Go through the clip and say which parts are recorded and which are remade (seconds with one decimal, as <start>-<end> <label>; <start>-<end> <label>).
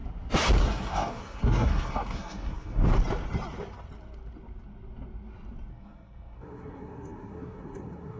0.0-0.6 recorded; 0.6-2.8 remade; 2.8-5.7 recorded; 5.7-8.2 remade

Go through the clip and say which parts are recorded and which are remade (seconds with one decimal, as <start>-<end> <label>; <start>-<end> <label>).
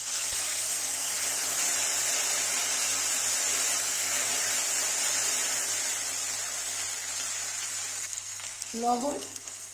0.0-1.1 remade; 1.1-3.8 recorded; 3.8-4.3 remade; 4.3-8.0 recorded; 8.0-9.7 remade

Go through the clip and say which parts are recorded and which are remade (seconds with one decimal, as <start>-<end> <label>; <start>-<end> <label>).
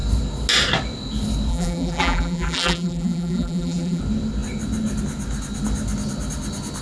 0.0-1.5 recorded; 1.5-4.0 remade; 4.0-6.8 recorded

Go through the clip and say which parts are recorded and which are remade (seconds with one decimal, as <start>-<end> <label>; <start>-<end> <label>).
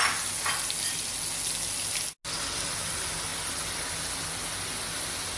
0.0-5.4 recorded